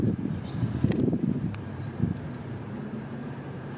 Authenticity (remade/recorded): remade